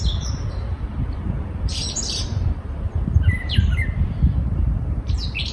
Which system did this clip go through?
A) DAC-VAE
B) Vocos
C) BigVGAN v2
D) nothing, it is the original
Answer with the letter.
C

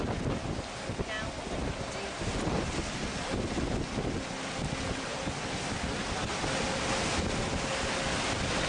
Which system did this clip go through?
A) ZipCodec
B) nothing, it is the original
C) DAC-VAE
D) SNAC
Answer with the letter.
B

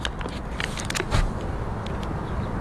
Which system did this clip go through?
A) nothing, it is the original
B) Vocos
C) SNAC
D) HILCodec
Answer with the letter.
A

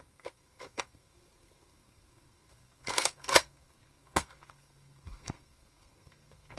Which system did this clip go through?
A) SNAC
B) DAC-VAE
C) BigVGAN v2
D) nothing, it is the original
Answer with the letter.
A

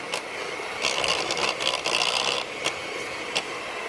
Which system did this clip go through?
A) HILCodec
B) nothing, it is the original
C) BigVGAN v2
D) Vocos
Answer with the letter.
B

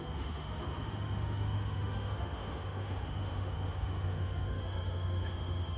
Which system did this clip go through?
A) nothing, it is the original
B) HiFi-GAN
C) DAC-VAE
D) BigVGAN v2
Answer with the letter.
C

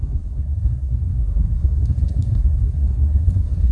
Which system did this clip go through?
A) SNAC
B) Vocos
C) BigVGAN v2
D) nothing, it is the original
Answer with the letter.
A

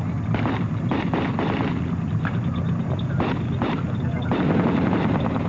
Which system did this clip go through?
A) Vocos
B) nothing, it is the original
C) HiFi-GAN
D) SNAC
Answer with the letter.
B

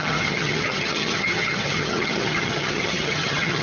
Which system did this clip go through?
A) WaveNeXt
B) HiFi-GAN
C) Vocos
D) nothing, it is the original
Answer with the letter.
B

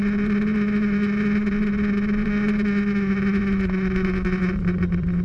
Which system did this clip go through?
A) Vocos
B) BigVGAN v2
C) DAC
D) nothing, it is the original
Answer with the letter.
A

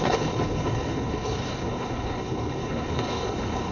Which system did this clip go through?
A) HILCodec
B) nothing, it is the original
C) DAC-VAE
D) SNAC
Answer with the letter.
A